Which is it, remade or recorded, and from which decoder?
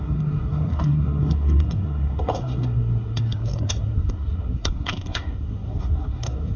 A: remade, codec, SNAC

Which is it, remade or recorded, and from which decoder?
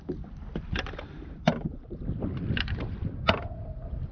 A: recorded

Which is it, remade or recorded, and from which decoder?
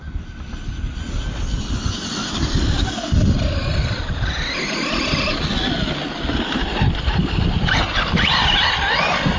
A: recorded